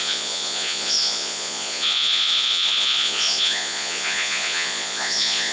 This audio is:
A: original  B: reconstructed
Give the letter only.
B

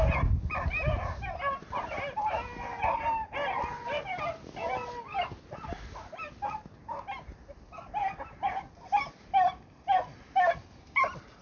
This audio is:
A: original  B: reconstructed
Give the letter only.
A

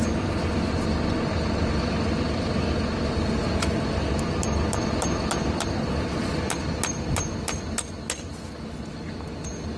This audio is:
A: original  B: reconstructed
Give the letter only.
A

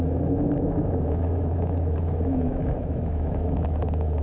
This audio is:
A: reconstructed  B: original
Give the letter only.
A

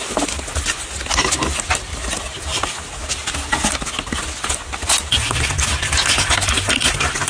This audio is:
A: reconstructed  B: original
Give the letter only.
B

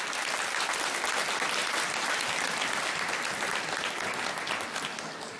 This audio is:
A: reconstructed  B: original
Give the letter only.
B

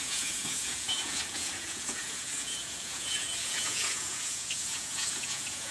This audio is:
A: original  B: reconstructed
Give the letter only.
B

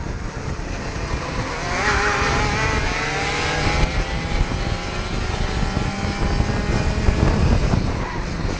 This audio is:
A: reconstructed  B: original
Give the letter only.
B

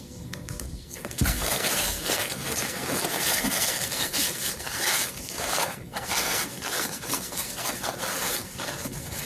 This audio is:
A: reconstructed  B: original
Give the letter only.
A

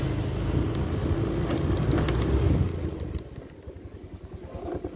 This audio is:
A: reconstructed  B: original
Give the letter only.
B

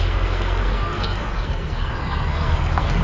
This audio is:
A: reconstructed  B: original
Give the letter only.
A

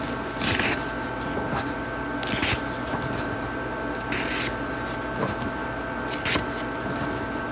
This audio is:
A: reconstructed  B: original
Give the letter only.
B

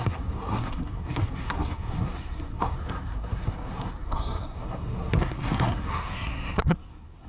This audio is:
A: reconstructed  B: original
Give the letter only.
A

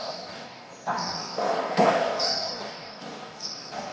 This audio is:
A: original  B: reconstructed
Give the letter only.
B